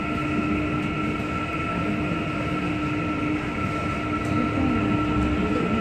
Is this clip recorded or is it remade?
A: recorded